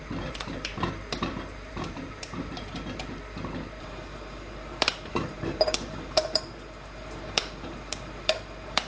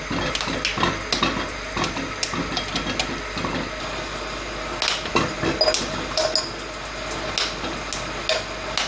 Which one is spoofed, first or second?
first